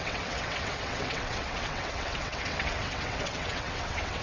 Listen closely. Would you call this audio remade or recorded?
remade